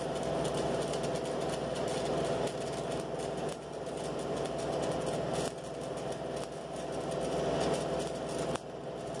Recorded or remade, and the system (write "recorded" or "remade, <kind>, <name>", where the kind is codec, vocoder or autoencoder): recorded